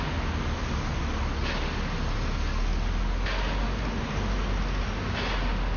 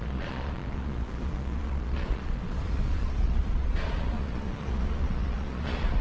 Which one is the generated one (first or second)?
second